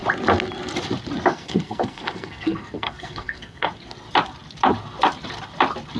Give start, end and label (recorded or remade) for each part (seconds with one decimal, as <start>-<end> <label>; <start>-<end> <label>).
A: 0.0-1.3 recorded; 1.3-3.7 remade; 3.7-6.0 recorded